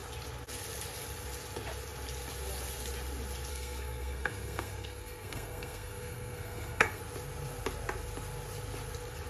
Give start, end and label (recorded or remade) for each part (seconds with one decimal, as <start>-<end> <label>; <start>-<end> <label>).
0.0-3.5 recorded; 3.5-7.0 remade; 7.0-9.3 recorded